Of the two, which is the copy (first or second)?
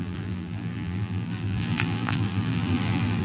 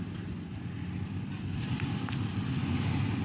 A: first